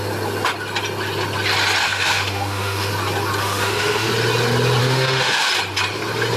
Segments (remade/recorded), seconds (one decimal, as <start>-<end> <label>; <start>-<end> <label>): 0.0-1.8 recorded; 1.8-2.9 remade; 2.9-3.4 recorded; 3.4-4.1 remade; 4.1-4.8 recorded; 4.8-5.5 remade; 5.5-6.4 recorded